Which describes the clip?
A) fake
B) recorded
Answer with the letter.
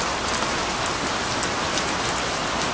B